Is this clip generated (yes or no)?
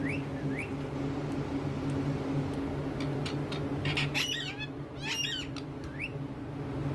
no